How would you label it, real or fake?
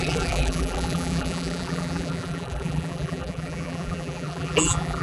fake